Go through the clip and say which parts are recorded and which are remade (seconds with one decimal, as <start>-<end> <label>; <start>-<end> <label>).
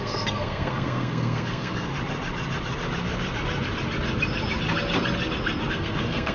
0.0-1.9 remade; 1.9-5.7 recorded; 5.7-6.3 remade